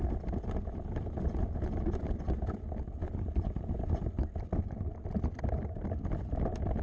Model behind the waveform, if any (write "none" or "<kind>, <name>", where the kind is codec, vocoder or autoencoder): none